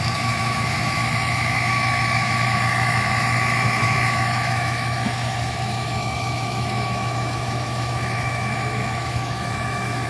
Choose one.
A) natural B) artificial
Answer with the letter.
B